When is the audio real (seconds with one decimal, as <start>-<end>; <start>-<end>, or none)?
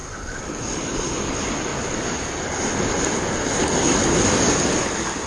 0.0-5.3